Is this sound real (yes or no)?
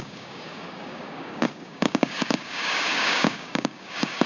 no